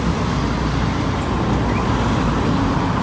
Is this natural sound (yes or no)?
yes